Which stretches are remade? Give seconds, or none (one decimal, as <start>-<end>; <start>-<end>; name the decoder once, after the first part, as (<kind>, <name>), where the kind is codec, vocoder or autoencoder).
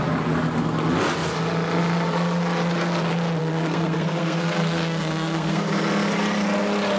3.4-5.6 (codec, SNAC)